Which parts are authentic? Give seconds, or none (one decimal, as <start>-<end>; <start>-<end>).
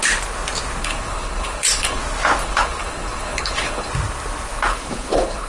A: 0.0-0.8; 2.0-2.4; 3.9-4.7